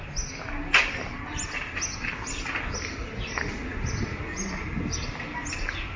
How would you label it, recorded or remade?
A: recorded